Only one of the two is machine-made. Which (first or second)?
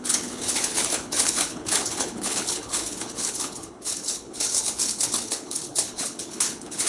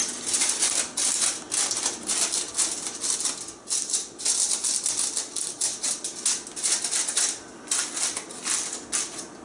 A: first